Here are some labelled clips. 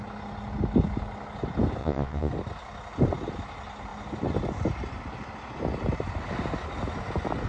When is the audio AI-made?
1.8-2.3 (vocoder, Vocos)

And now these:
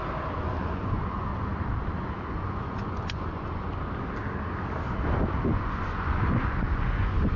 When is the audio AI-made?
0.6-1.3 (vocoder, Vocos); 2.3-3.7; 5.4-7.4

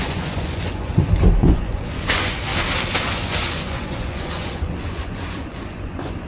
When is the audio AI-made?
0.0-2.5 (vocoder, Vocos); 3.0-6.3

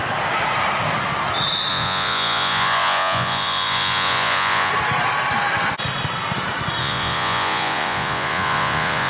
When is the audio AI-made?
1.7-4.7 (vocoder, Vocos); 6.8-9.1